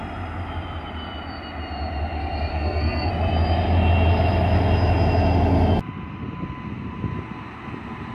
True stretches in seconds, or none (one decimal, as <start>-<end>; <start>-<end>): 0.0-2.5; 3.1-8.1